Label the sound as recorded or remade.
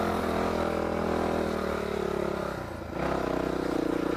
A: recorded